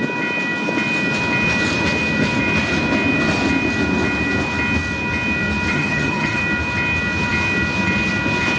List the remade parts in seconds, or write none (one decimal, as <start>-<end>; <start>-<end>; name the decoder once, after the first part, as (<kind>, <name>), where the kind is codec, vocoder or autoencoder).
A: 5.7-6.4 (vocoder, HiFi-GAN)